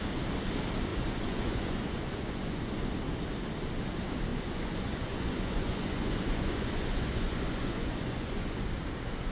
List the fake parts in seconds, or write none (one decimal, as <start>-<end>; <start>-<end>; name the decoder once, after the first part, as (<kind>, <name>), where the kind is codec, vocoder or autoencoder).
0.9-2.9 (vocoder, Vocos); 4.3-8.6